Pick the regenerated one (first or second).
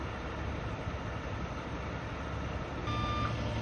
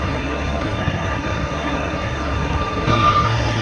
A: second